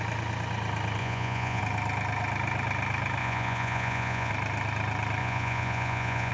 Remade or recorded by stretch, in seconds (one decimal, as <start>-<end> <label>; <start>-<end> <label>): 0.0-1.0 recorded; 1.0-1.6 remade; 1.6-3.2 recorded; 3.2-4.3 remade; 4.3-5.2 recorded; 5.2-6.3 remade